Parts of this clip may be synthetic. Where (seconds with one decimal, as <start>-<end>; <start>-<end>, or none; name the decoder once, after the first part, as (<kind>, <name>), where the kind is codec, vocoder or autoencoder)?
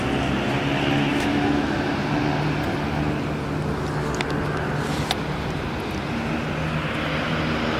1.1-1.9 (autoencoder, DAC-VAE)